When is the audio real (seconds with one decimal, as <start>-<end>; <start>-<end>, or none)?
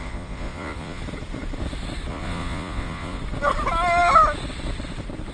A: 1.0-2.1; 3.2-5.3